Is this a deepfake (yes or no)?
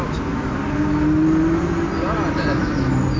no